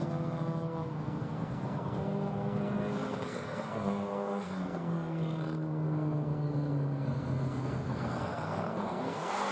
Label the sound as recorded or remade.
remade